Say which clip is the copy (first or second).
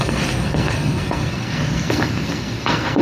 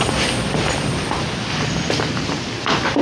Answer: first